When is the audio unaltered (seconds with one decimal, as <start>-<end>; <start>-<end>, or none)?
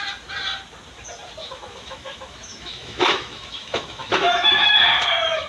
0.0-1.4; 4.7-5.5